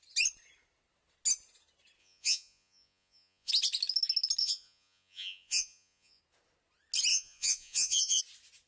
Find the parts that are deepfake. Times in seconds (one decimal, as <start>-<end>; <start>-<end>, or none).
2.0-3.5; 4.4-6.2; 7.1-8.2